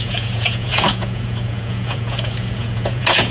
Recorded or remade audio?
remade